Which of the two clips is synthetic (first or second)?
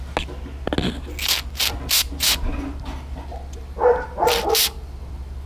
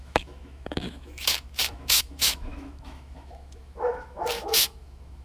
second